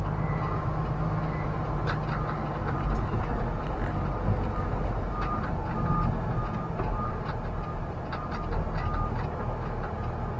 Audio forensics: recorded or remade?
recorded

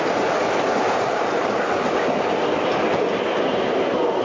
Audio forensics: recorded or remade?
recorded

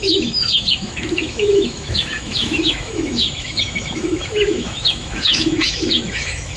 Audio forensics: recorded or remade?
remade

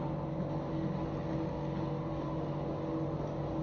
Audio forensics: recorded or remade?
recorded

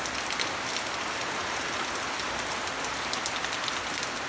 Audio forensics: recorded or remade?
recorded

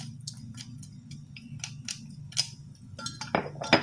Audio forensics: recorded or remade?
recorded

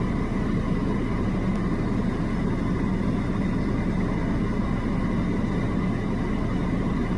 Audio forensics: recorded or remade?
recorded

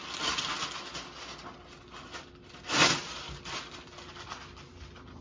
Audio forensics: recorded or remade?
recorded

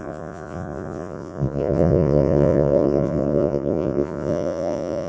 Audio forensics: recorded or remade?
remade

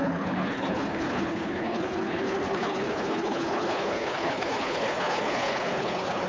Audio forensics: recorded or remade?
remade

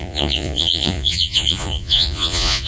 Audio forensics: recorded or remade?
remade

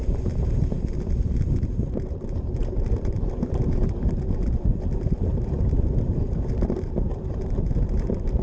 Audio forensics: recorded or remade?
remade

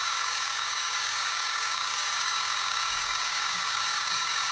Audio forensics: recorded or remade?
remade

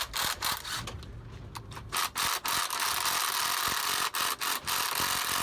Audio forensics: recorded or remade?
recorded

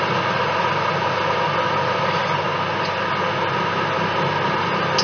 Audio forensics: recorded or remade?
recorded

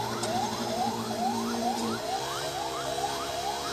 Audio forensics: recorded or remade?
remade